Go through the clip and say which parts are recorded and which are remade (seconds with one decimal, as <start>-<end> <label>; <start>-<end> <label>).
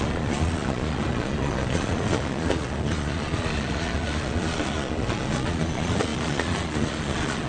0.0-7.5 remade